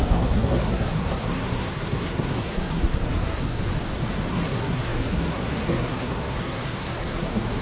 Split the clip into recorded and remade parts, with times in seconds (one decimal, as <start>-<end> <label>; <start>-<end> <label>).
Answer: 0.0-3.6 remade; 3.6-4.3 recorded; 4.3-7.6 remade